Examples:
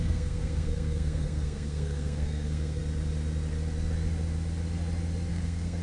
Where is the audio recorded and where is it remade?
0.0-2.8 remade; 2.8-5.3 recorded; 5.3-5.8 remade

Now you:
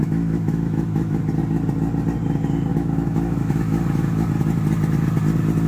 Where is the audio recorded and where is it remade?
0.0-1.2 remade; 1.2-2.7 recorded; 2.7-4.3 remade; 4.3-5.7 recorded